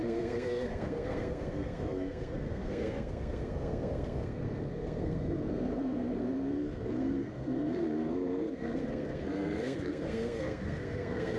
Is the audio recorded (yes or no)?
no